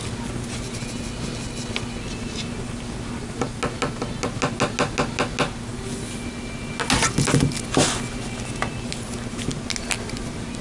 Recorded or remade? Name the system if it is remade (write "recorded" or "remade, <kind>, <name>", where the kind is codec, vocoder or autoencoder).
recorded